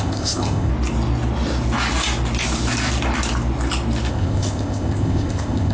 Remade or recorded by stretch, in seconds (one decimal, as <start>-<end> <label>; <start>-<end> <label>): 0.0-0.7 remade; 0.7-4.1 recorded; 4.1-5.7 remade